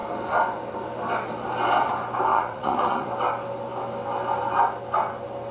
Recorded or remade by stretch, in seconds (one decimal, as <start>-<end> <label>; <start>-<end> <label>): 0.0-2.3 recorded; 2.3-3.1 remade; 3.1-5.5 recorded